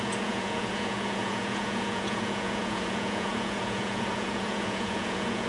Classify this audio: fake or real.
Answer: fake